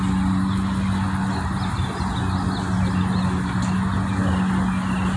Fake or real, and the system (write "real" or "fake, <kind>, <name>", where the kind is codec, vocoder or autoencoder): real